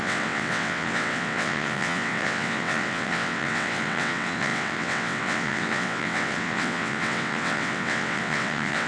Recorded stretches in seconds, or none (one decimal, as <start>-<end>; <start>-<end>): none